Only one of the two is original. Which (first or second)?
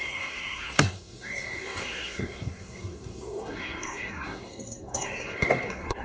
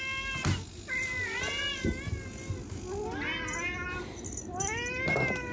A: second